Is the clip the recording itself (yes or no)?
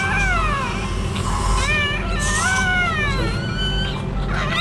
yes